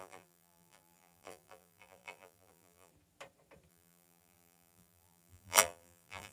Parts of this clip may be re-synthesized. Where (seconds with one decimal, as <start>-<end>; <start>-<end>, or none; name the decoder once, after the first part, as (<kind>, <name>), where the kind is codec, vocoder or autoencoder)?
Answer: 0.0-2.9 (vocoder, BigVGAN v2); 3.7-6.3